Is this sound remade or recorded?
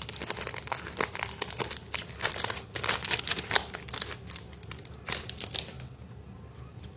recorded